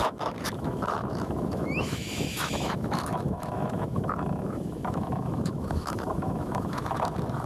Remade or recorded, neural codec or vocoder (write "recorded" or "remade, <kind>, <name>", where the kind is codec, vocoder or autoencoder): remade, autoencoder, DAC-VAE